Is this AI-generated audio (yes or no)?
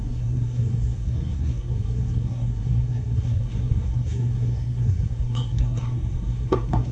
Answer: yes